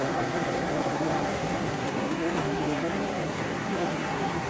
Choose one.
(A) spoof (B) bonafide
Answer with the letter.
A